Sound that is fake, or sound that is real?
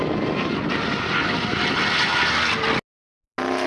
real